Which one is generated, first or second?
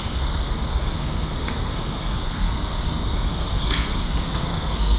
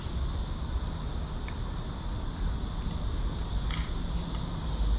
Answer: first